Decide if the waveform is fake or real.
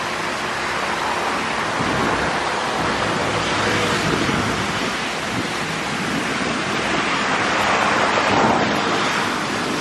real